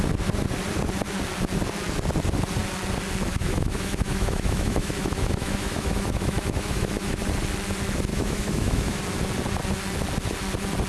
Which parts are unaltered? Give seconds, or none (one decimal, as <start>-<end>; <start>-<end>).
0.0-3.3; 7.2-8.1; 9.0-10.9